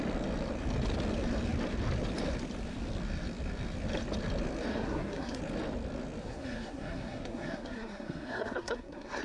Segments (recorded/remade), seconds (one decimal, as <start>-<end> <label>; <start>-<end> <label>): 0.0-4.7 recorded; 4.7-5.4 remade; 5.4-6.2 recorded; 6.2-9.2 remade